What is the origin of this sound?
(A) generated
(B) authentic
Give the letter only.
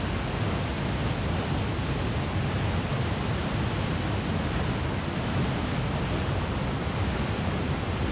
B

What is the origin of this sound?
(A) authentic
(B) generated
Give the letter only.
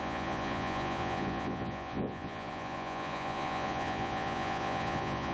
B